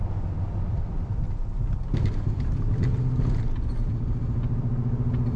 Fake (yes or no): no